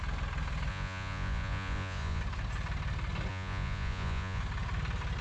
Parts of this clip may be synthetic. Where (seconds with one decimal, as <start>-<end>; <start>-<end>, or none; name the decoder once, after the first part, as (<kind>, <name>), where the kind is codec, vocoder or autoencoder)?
0.7-2.2 (vocoder, Vocos); 3.3-4.4